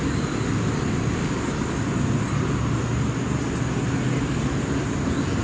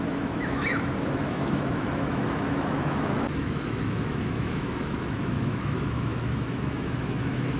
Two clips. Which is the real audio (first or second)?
first